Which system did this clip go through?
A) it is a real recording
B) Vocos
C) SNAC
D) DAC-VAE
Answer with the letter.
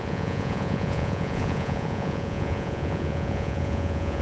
B